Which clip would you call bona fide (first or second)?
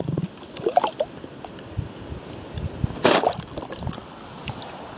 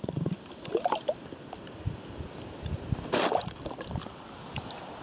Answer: first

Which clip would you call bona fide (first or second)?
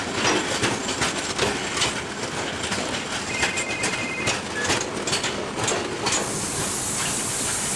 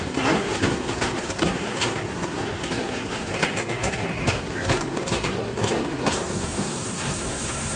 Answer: first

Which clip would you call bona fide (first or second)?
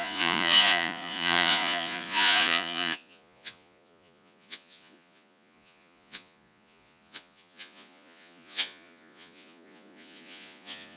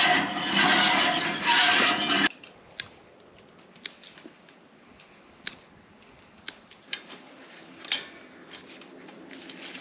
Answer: second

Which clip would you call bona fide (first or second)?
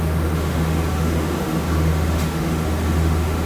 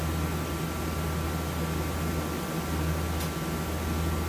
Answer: second